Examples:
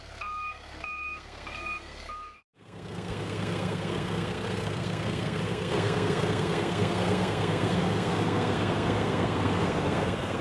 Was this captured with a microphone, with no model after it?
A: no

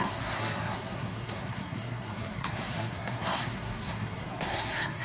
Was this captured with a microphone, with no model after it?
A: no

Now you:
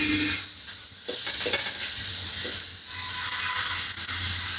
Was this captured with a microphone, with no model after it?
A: yes